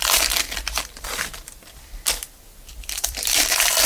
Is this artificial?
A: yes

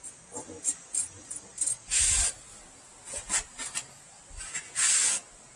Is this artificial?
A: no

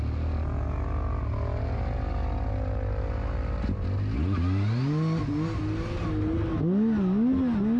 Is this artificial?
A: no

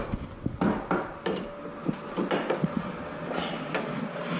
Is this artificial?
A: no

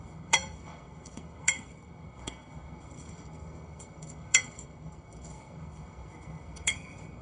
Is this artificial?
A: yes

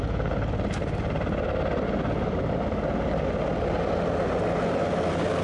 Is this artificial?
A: no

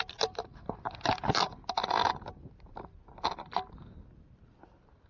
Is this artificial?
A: no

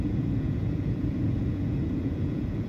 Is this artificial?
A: yes